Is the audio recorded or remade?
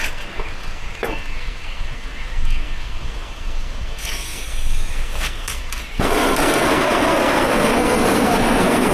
remade